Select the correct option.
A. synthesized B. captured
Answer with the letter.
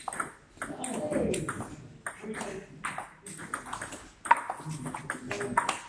B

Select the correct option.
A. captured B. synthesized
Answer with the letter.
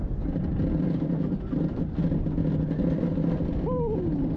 A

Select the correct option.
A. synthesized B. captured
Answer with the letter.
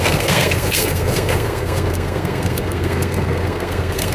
A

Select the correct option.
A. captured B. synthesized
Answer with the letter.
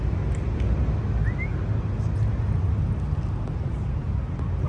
A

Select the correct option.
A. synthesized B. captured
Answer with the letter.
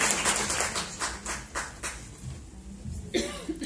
B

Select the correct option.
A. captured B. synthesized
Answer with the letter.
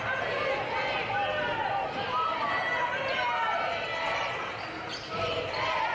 A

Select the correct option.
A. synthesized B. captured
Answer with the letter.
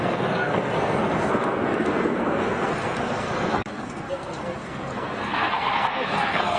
A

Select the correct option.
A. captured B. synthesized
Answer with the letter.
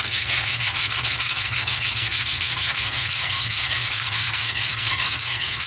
B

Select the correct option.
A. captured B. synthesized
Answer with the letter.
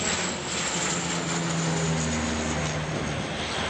A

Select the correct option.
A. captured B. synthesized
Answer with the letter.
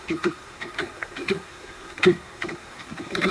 B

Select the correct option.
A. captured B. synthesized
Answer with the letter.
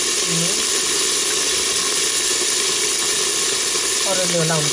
A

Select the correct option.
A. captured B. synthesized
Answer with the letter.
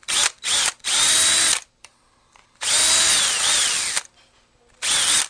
A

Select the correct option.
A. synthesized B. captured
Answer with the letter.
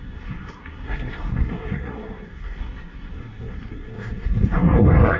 A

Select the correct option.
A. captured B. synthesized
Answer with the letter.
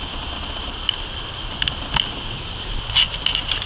A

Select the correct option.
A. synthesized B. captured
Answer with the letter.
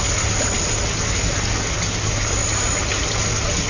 B